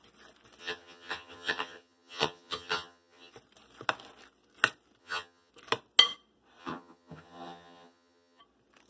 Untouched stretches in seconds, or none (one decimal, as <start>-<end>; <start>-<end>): 0.0-0.6; 3.3-5.0; 5.5-6.6; 8.4-8.9